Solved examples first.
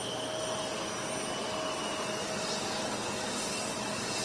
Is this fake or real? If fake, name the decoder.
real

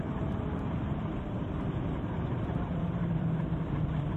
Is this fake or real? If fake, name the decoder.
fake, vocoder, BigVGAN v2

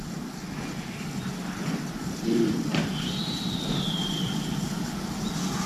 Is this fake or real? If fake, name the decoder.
real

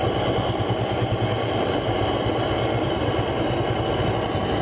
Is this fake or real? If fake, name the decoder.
real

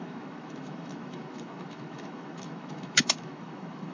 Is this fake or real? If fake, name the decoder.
fake, autoencoder, DAC-VAE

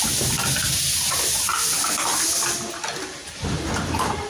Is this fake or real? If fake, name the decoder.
real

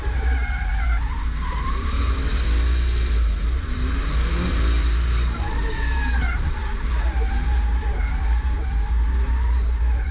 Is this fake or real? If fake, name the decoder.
fake, vocoder, BigVGAN v2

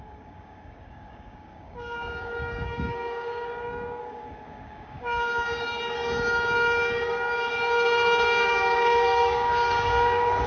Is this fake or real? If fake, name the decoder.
fake, codec, DAC